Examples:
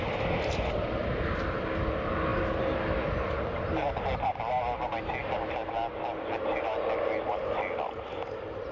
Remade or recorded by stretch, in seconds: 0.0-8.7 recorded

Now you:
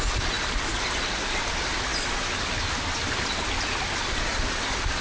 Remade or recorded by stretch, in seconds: 0.0-5.0 recorded

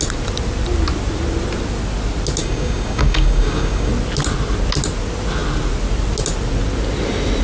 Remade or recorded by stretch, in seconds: 0.0-2.4 recorded; 2.4-3.9 remade; 3.9-7.4 recorded

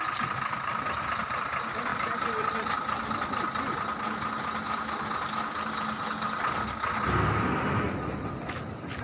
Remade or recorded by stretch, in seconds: 0.0-9.0 recorded